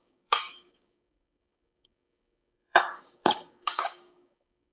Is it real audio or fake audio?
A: fake